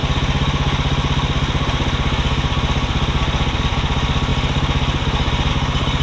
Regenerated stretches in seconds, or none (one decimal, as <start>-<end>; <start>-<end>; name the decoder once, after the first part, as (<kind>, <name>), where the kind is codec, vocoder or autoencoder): none